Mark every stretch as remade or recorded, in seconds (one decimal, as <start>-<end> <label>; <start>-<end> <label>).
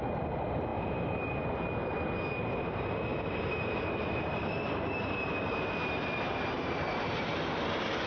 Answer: 0.0-0.7 recorded; 0.7-1.4 remade; 1.4-3.1 recorded; 3.1-7.4 remade; 7.4-8.1 recorded